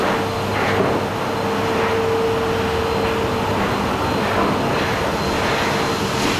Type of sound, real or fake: real